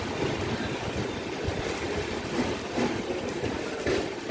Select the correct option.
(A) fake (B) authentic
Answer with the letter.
B